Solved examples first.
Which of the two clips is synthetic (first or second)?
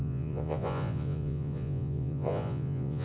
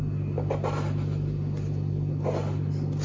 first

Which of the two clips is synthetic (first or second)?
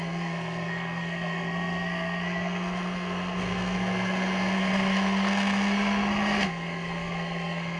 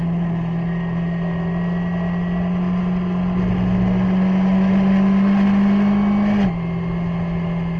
first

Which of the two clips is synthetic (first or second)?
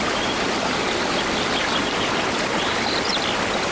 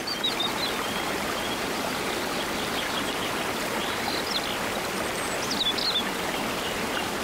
first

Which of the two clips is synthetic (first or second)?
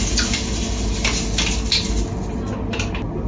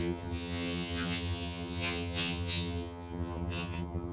second